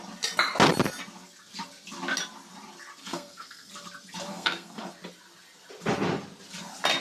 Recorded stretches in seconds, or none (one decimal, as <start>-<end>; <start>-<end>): 0.0-3.0; 3.7-4.3; 4.9-7.0